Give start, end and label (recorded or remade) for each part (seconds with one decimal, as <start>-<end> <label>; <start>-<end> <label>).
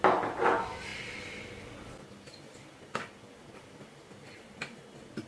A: 0.0-5.3 recorded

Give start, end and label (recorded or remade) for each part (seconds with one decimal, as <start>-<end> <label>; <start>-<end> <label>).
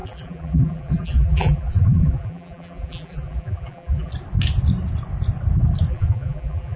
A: 0.0-4.1 remade; 4.1-5.9 recorded; 5.9-6.8 remade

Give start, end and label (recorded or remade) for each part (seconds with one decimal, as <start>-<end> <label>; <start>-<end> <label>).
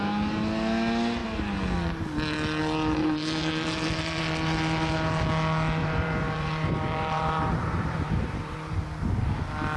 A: 0.0-3.0 recorded; 3.0-4.2 remade; 4.2-5.8 recorded; 5.8-9.0 remade; 9.0-9.8 recorded